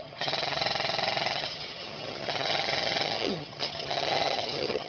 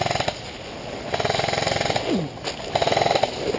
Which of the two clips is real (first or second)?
second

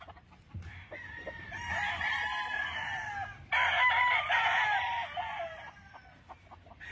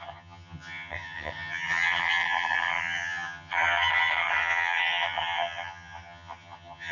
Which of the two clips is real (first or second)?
first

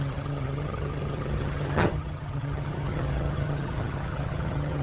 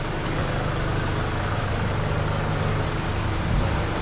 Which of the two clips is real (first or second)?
second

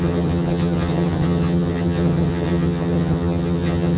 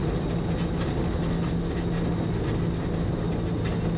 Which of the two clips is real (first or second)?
second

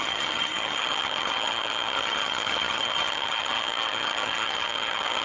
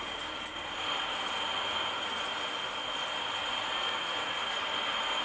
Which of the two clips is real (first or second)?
second